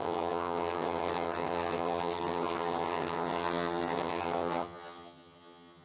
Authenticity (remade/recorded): remade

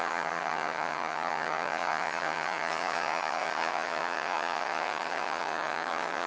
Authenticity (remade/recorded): remade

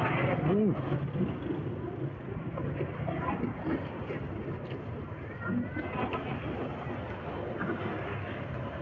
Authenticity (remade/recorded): recorded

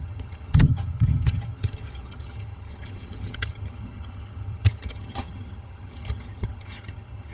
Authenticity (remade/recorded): remade